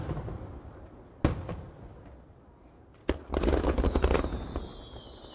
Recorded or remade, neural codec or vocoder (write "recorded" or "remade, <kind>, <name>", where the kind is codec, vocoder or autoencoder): recorded